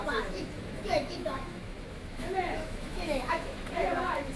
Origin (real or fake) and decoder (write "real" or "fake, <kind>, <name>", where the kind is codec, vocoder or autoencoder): fake, autoencoder, DAC-VAE